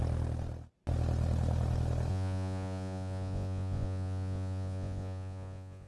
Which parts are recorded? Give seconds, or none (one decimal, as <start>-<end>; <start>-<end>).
0.0-2.1